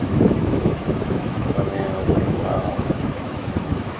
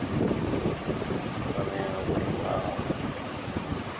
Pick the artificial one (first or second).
first